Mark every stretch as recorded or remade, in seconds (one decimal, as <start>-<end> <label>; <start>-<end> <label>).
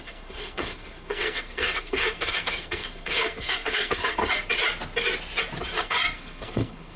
0.0-4.2 remade; 4.2-5.8 recorded; 5.8-7.0 remade